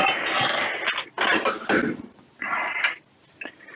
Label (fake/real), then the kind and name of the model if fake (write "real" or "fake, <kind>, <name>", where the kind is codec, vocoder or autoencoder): real